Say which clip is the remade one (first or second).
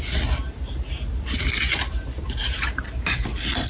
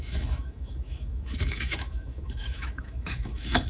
second